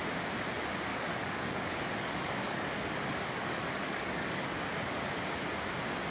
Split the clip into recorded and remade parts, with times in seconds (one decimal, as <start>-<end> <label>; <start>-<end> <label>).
0.0-0.9 recorded; 0.9-4.6 remade; 4.6-6.1 recorded

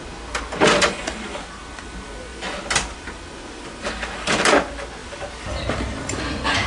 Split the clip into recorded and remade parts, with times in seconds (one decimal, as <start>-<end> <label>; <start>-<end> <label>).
0.0-2.3 recorded; 2.3-3.9 remade; 3.9-5.0 recorded; 5.0-6.7 remade

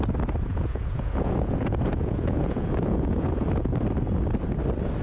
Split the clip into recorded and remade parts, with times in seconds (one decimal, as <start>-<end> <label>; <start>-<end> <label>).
0.0-0.5 recorded; 0.5-3.5 remade; 3.5-5.0 recorded

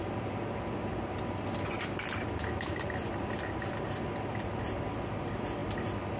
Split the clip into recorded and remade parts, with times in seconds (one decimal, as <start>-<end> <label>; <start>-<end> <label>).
0.0-6.2 recorded

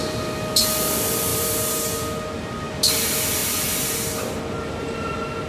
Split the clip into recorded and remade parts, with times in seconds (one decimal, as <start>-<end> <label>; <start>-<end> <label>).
0.0-1.3 recorded; 1.3-2.3 remade; 2.3-5.5 recorded

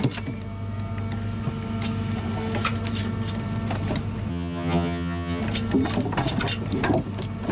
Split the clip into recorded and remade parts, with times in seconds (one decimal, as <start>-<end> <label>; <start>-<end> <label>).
0.0-4.3 recorded; 4.3-5.4 remade; 5.4-7.5 recorded

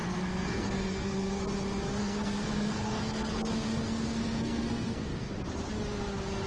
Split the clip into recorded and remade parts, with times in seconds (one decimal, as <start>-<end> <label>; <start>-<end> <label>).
0.0-1.4 remade; 1.4-2.0 recorded; 2.0-5.3 remade; 5.3-6.5 recorded

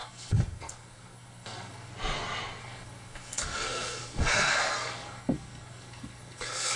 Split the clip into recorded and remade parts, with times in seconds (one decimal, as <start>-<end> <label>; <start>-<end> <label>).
0.0-1.9 remade; 1.9-2.6 recorded; 2.6-6.8 remade